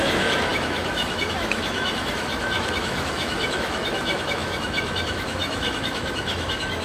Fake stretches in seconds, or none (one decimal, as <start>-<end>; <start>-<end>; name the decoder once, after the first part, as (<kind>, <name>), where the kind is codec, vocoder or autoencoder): 0.0-6.8 (autoencoder, DAC-VAE)